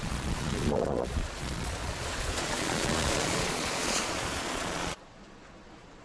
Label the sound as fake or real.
fake